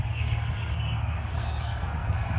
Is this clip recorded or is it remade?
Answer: remade